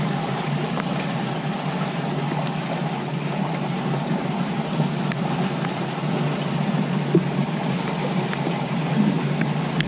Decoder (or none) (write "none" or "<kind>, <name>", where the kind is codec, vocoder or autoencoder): none